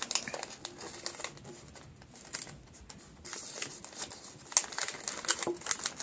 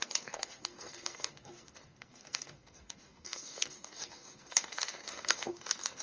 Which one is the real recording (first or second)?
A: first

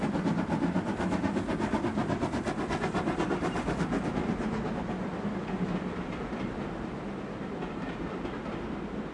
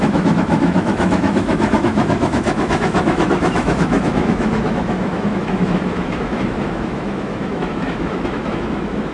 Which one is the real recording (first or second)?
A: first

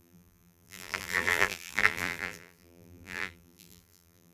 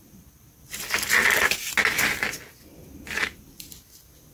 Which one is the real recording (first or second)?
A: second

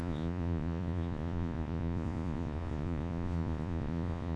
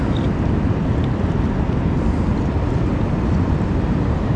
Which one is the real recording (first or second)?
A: second